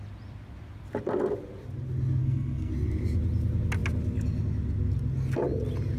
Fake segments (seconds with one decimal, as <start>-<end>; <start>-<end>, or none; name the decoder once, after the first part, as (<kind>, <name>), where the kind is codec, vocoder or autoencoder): 2.2-2.7 (codec, SNAC)